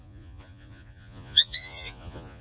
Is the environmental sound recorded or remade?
remade